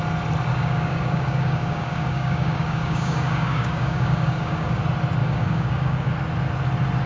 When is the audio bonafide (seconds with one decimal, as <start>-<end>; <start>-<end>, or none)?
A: 0.0-0.5; 4.8-5.2; 6.1-7.1